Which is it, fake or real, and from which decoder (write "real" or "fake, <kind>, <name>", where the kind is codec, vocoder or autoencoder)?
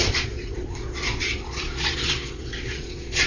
fake, vocoder, Vocos